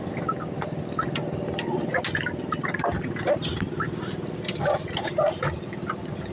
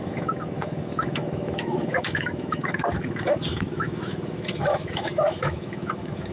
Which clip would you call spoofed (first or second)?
second